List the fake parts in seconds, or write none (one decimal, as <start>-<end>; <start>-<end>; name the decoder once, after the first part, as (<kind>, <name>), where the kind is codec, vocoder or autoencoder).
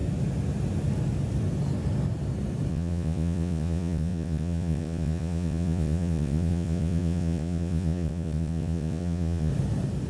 2.7-9.5 (vocoder, Vocos)